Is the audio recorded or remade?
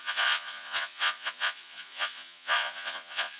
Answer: remade